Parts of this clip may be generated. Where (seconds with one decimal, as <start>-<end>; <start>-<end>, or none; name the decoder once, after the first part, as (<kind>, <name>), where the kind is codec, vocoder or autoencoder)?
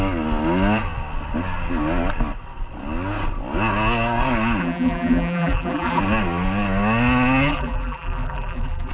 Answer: 4.6-6.0 (vocoder, BigVGAN v2); 7.5-8.9